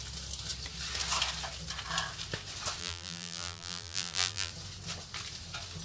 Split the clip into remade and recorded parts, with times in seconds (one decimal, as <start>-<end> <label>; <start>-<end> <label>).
0.0-2.8 recorded; 2.8-4.5 remade; 4.5-5.8 recorded